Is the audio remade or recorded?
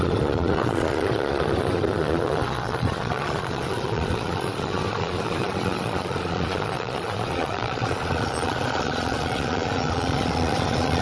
remade